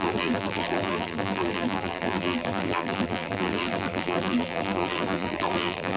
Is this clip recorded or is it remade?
remade